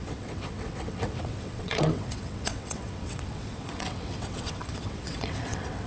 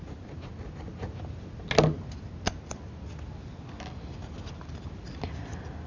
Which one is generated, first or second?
first